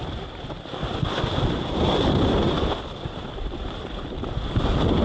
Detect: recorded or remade recorded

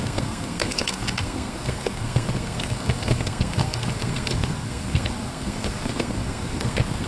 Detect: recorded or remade remade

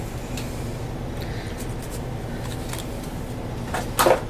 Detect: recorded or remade recorded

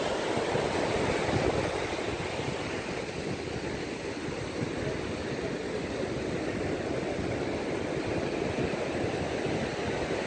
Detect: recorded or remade recorded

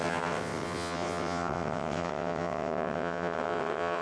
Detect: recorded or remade remade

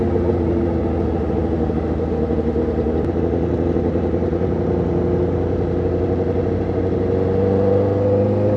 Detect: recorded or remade recorded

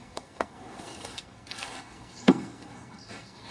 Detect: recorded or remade remade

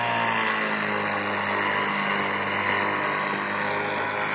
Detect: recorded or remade recorded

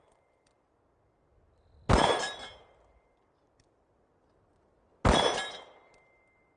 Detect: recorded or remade recorded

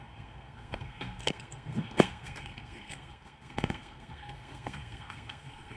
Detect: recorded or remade remade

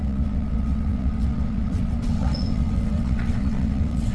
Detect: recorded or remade remade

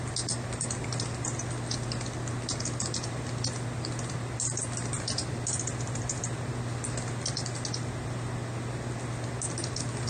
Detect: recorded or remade recorded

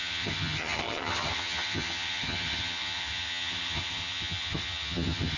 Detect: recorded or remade remade